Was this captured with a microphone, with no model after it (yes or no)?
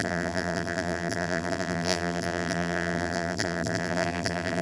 no